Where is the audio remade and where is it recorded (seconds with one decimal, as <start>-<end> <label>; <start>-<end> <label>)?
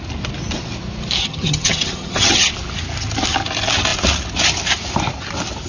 0.0-1.2 recorded; 1.2-2.5 remade; 2.5-5.7 recorded